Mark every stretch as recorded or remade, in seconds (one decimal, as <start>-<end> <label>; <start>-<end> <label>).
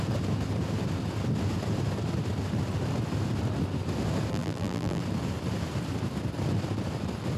0.0-4.3 recorded; 4.3-5.0 remade; 5.0-7.4 recorded